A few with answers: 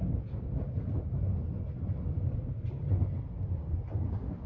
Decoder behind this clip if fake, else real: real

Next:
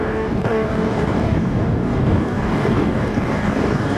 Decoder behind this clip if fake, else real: fake, codec, DAC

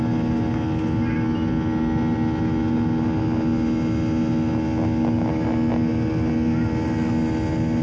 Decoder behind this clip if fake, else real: real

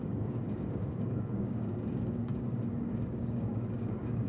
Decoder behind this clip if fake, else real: fake, codec, DAC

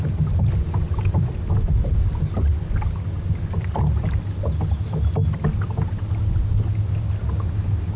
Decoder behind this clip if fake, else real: real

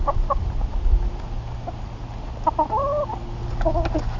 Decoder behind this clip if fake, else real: real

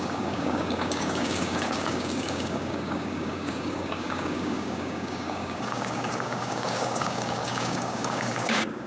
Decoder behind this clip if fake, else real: fake, codec, DAC